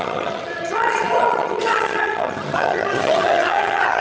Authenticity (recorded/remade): remade